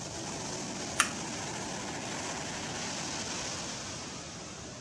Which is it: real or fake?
real